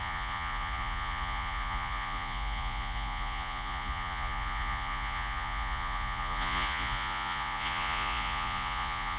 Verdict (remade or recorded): remade